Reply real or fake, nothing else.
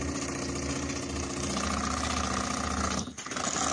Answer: real